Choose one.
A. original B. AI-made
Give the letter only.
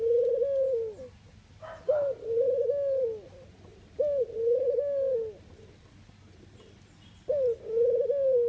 A